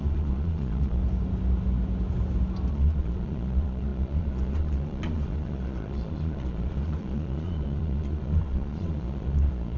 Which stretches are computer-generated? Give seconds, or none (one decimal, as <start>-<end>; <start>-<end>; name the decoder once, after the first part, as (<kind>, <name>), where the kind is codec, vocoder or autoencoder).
0.0-1.0 (vocoder, Vocos); 2.7-9.8